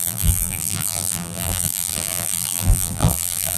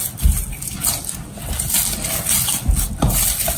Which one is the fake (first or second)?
first